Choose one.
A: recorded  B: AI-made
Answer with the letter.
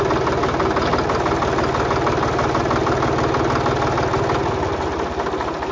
A